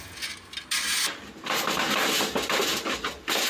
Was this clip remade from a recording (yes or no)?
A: no